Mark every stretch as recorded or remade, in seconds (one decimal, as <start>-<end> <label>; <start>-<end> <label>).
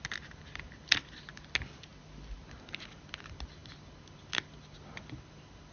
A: 0.0-5.7 recorded